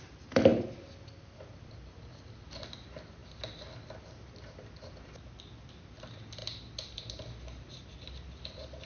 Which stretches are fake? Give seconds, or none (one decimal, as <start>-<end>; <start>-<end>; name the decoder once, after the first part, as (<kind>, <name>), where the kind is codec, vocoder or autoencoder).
none

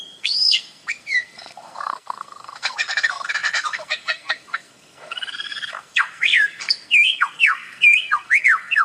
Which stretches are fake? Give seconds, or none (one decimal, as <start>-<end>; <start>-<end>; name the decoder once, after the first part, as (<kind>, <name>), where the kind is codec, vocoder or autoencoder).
0.0-8.8 (codec, SNAC)

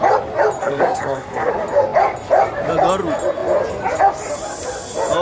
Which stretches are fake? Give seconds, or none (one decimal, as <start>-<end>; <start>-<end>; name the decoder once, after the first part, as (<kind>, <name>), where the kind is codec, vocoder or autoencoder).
0.6-1.5 (codec, SNAC)

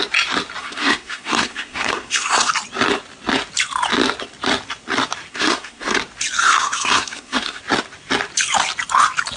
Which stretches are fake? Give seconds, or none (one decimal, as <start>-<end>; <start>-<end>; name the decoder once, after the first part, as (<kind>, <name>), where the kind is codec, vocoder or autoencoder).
0.6-2.5 (codec, SNAC); 5.3-6.0; 6.4-7.6